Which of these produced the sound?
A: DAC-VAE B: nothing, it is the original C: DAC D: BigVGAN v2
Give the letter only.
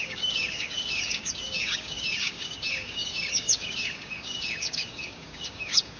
C